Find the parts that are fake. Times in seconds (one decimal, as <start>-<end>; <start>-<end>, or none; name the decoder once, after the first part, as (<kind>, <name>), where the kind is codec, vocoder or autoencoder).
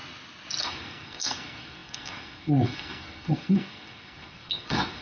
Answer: 0.6-5.0 (codec, SNAC)